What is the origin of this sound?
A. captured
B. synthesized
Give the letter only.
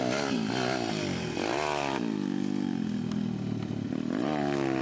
A